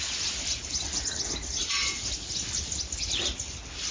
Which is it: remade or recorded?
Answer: recorded